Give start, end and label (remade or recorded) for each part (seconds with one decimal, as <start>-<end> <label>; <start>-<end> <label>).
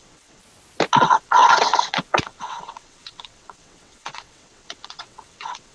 0.0-0.4 remade; 0.4-1.0 recorded; 1.0-5.7 remade